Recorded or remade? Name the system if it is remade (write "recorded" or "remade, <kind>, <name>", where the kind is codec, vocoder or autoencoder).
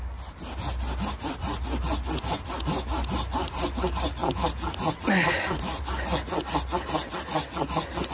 recorded